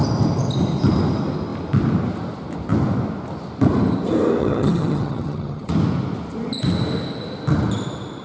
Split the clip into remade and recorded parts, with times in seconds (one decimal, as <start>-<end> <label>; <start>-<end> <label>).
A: 0.0-4.4 recorded; 4.4-5.7 remade; 5.7-8.2 recorded